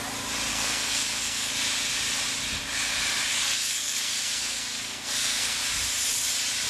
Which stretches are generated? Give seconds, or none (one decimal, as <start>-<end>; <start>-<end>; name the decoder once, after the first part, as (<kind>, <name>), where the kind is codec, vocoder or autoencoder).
0.5-1.5 (codec, SNAC); 3.3-5.6